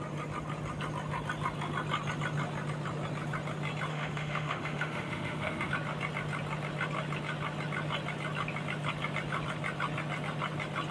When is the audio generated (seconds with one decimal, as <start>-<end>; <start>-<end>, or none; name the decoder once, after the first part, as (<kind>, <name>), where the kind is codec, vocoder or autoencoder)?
3.9-5.7 (autoencoder, DAC-VAE)